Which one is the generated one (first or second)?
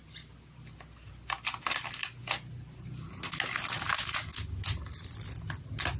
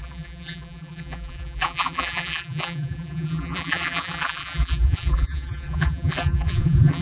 second